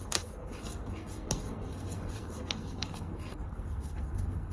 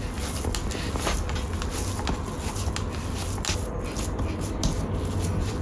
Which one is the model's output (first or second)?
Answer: first